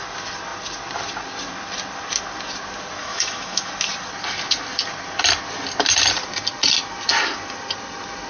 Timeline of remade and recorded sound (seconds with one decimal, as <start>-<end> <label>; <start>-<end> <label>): 0.0-3.0 recorded; 3.0-3.7 remade; 3.7-8.3 recorded